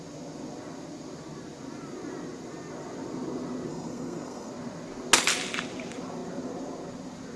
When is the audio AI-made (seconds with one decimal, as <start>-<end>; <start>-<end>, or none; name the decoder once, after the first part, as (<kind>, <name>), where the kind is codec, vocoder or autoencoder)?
3.7-4.5 (codec, SNAC)